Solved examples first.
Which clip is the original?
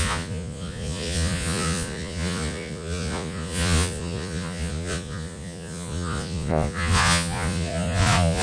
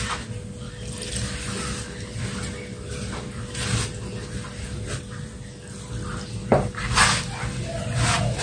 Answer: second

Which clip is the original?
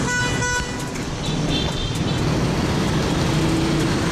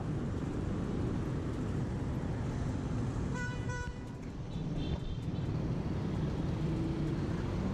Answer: first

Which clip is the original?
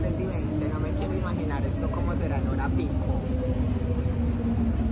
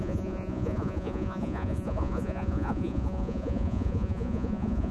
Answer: first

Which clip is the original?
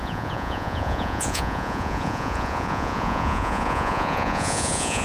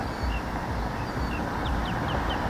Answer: second